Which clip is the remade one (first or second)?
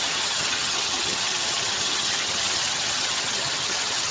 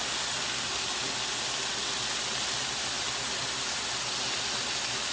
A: first